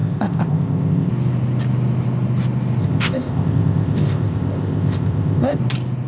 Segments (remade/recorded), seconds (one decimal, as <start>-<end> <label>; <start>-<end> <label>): 0.0-1.1 remade; 1.1-2.8 recorded; 2.8-5.6 remade; 5.6-6.1 recorded